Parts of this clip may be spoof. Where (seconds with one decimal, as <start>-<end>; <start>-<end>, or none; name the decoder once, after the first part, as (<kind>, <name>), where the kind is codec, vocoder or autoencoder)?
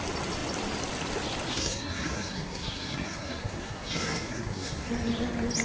1.5-4.9 (codec, SNAC)